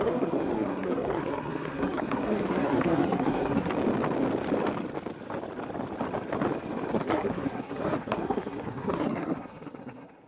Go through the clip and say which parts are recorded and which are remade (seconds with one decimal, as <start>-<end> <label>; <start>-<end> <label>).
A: 0.0-3.7 remade; 3.7-6.9 recorded; 6.9-10.3 remade